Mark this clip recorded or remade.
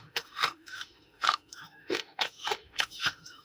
remade